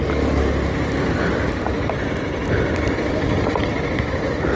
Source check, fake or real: real